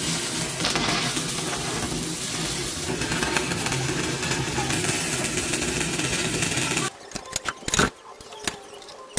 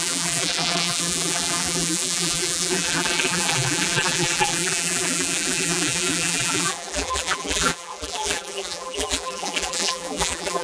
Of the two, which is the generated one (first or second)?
second